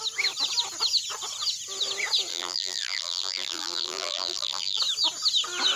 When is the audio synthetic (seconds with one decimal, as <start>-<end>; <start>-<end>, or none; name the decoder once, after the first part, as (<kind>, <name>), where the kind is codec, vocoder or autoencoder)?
2.3-4.8 (vocoder, BigVGAN v2)